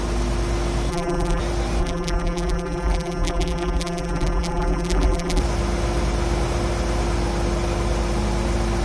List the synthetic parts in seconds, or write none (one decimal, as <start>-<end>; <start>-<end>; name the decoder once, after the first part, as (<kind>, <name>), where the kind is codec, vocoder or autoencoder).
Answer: 0.9-1.4 (vocoder, BigVGAN v2); 1.8-5.4